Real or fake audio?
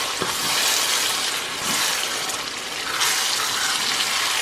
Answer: real